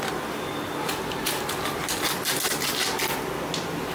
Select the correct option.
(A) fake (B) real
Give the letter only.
B